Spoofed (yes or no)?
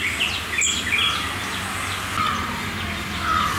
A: yes